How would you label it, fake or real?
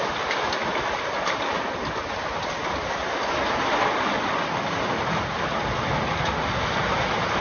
real